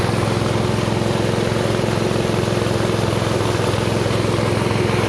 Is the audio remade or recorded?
recorded